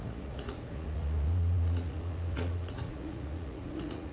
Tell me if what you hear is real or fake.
fake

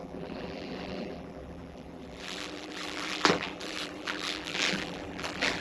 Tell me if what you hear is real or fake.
fake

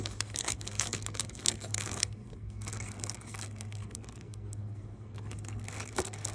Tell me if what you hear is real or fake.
fake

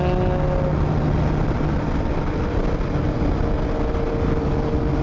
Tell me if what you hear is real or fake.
real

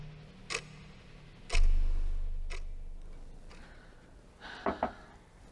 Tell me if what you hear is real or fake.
real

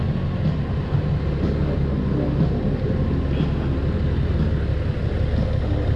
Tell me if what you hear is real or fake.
real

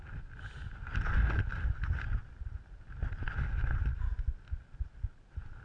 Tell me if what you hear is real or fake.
real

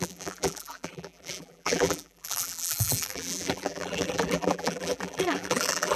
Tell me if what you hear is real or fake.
fake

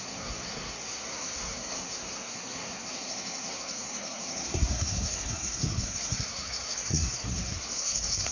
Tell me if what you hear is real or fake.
fake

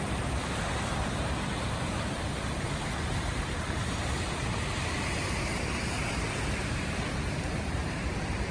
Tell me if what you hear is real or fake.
fake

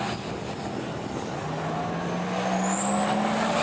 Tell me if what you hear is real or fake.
real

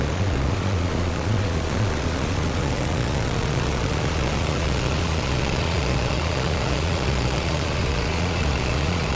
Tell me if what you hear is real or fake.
fake